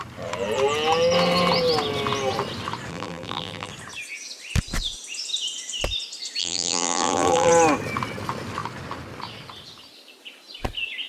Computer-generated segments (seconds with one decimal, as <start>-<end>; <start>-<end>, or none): 2.9-3.7; 6.4-7.5